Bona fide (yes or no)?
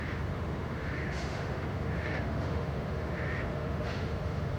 no